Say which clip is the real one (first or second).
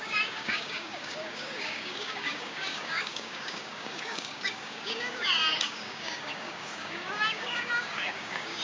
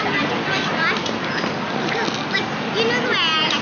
second